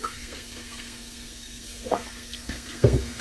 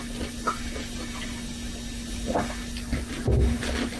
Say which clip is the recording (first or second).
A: second